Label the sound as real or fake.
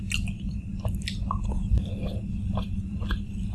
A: real